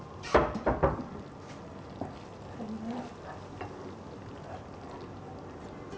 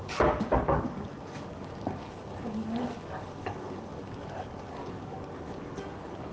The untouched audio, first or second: first